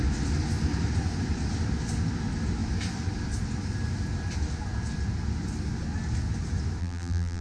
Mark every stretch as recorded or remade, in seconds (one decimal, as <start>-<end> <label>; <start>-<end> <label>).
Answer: 0.0-6.8 recorded; 6.8-7.4 remade